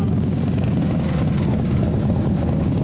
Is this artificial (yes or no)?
yes